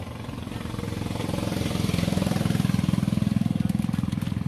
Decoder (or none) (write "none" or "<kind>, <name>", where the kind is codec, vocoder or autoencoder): none